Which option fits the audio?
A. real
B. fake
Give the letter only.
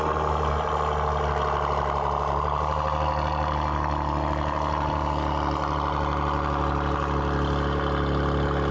A